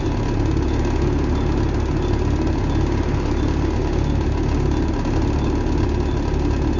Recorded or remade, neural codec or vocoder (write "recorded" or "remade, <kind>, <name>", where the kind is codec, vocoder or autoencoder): recorded